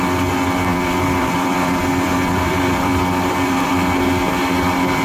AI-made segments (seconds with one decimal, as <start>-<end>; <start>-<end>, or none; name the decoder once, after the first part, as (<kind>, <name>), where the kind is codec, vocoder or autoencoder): 0.7-3.7 (vocoder, BigVGAN v2)

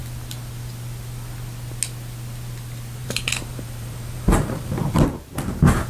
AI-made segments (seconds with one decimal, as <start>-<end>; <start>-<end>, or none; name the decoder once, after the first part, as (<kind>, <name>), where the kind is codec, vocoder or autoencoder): 3.0-4.7 (vocoder, BigVGAN v2)

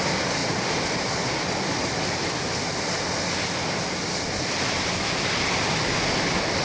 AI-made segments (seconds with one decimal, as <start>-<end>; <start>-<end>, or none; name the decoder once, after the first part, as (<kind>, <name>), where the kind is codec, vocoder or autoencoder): none

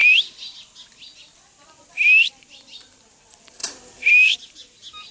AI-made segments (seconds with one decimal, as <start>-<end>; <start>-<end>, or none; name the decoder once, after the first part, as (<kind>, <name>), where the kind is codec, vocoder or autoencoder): 3.6-4.1 (vocoder, BigVGAN v2)

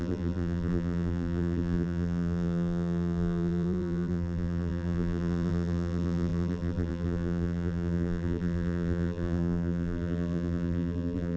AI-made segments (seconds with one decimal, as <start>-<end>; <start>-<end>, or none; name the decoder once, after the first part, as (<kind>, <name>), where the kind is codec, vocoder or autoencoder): 0.0-11.4 (vocoder, BigVGAN v2)

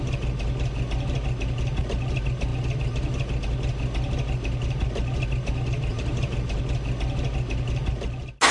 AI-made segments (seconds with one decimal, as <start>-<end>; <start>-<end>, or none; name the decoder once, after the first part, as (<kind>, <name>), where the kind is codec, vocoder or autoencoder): 5.9-6.6 (vocoder, BigVGAN v2)